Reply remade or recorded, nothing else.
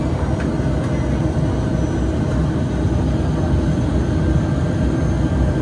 recorded